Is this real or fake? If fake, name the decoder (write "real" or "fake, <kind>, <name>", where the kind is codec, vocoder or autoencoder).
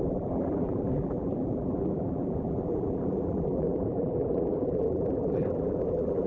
fake, vocoder, BigVGAN v2